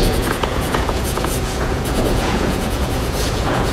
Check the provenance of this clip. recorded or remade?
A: remade